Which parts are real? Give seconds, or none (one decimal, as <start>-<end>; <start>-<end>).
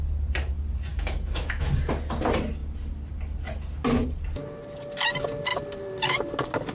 0.0-0.9; 1.7-6.7